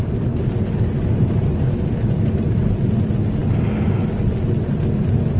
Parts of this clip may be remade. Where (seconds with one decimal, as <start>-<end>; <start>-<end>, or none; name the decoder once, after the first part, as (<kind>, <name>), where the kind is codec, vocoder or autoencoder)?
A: none